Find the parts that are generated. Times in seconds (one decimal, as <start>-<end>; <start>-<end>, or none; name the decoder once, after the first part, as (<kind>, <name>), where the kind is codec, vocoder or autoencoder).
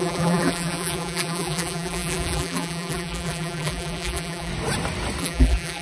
0.0-4.5 (vocoder, BigVGAN v2); 5.2-5.8